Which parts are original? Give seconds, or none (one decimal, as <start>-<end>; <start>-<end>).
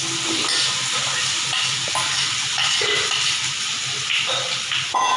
0.0-1.0; 4.1-5.2